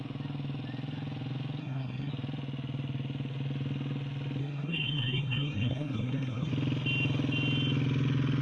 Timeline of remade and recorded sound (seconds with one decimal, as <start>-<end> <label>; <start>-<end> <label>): 0.0-1.6 recorded; 1.6-2.1 remade; 2.1-4.4 recorded; 4.4-6.5 remade; 6.5-8.4 recorded